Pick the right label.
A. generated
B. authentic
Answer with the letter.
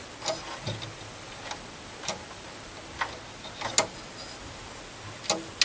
B